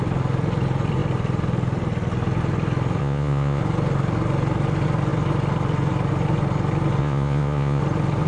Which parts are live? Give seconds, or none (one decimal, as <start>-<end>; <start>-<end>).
0.0-3.0; 3.6-7.0; 7.8-8.3